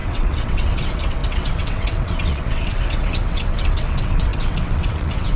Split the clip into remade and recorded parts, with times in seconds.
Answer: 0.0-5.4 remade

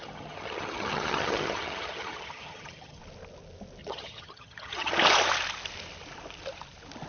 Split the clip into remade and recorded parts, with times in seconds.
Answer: 0.0-3.0 remade; 3.0-3.8 recorded; 3.8-4.9 remade; 4.9-7.1 recorded

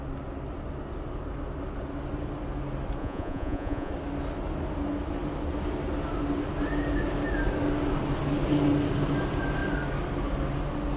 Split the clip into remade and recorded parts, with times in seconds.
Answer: 0.0-3.0 recorded; 3.0-3.9 remade; 3.9-11.0 recorded

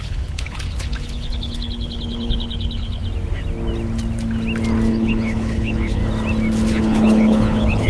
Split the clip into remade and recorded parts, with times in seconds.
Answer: 0.0-3.0 remade; 3.0-4.9 recorded; 4.9-6.0 remade; 6.0-6.7 recorded; 6.7-7.9 remade